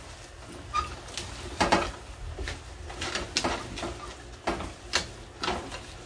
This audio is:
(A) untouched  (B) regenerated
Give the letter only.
A